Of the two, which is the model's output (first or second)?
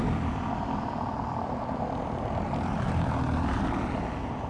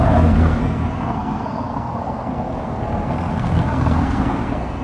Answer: second